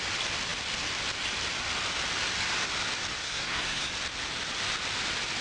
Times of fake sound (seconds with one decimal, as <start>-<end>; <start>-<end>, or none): 3.2-3.9